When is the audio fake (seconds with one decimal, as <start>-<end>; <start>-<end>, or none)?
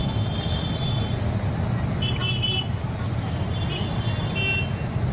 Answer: none